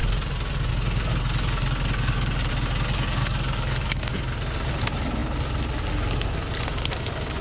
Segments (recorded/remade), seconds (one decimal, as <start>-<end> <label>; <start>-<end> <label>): 0.0-1.1 recorded; 1.1-2.5 remade; 2.5-3.2 recorded; 3.2-4.1 remade; 4.1-7.4 recorded